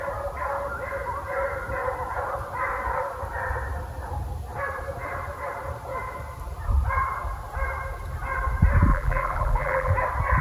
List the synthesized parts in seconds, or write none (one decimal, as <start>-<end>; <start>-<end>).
8.9-9.9